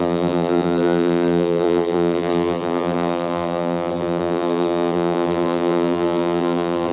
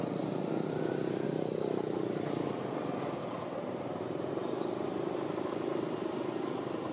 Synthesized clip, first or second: first